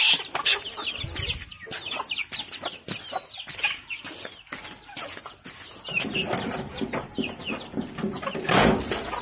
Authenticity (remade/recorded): recorded